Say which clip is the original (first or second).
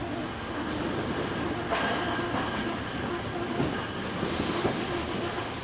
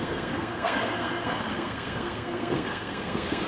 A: first